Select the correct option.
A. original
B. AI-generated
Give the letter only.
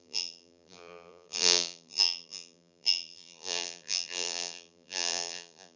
B